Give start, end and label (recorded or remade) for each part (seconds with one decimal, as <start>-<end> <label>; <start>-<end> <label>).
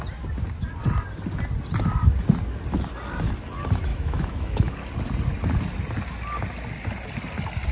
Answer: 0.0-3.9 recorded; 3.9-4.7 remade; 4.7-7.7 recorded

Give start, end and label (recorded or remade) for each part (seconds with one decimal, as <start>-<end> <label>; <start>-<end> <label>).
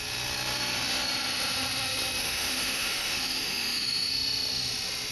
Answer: 0.0-2.2 recorded; 2.2-4.1 remade; 4.1-5.1 recorded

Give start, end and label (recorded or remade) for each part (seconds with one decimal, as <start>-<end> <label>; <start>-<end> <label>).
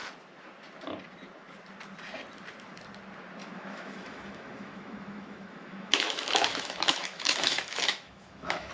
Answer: 0.0-3.4 recorded; 3.4-8.7 remade